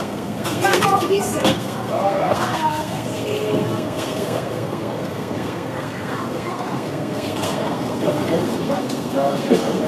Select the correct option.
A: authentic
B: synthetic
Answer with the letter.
B